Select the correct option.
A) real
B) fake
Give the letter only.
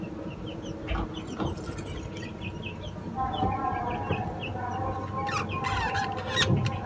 A